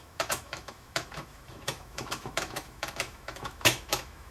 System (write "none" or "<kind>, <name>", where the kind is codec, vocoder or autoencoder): autoencoder, DAC-VAE